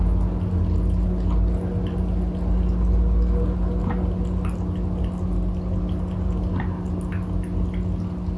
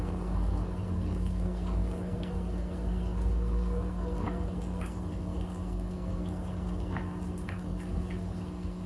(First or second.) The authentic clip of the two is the first